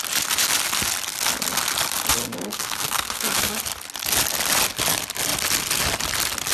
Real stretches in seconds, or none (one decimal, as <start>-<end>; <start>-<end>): 0.0-2.2; 3.5-6.5